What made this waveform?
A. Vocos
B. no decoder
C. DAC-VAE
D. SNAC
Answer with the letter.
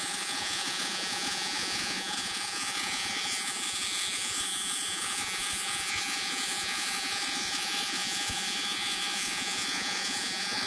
A